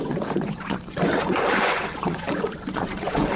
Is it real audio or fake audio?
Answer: fake